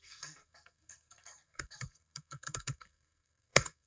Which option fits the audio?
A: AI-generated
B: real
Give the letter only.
A